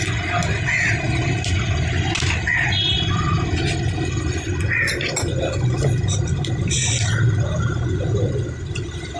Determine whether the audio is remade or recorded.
recorded